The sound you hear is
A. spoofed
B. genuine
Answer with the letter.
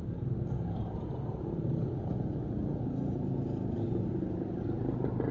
B